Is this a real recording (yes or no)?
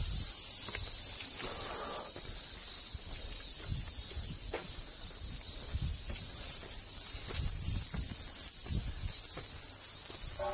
yes